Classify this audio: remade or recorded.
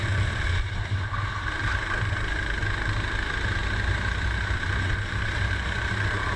recorded